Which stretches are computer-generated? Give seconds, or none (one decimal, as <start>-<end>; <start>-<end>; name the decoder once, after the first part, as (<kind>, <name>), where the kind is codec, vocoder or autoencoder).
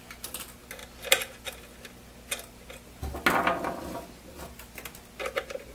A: none